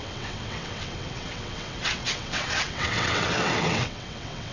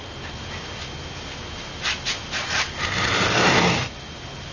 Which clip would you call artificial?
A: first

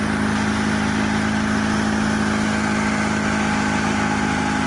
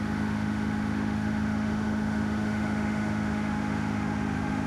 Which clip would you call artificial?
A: second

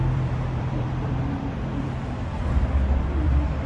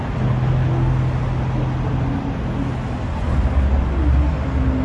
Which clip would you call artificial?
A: first